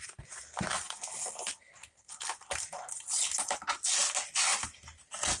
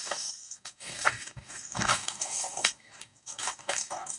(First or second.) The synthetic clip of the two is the second